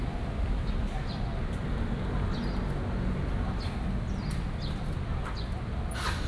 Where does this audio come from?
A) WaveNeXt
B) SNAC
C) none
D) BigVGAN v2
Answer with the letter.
C